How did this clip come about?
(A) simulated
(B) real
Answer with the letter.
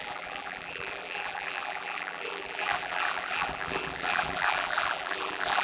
A